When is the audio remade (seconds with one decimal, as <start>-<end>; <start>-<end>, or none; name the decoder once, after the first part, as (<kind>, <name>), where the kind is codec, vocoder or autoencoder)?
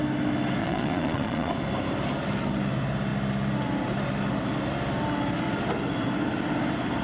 0.6-1.5 (vocoder, Vocos)